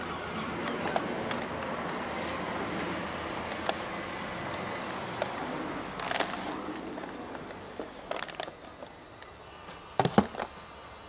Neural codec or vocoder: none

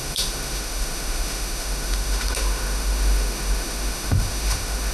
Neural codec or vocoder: autoencoder, DAC-VAE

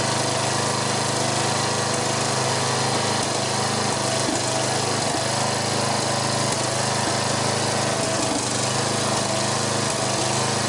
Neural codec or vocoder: none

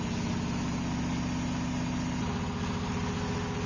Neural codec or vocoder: none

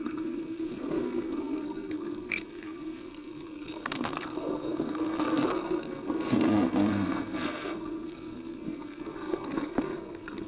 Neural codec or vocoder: codec, SNAC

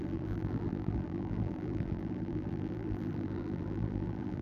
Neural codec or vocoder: vocoder, BigVGAN v2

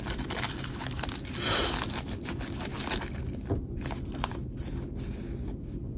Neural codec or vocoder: none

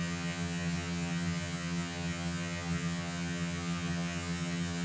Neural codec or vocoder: vocoder, HiFi-GAN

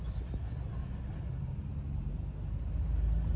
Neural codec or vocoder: none